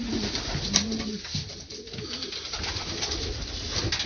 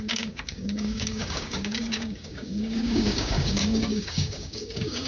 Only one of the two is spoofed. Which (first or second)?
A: second